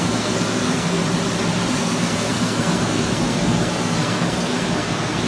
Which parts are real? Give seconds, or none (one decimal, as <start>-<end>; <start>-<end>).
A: 1.0-1.8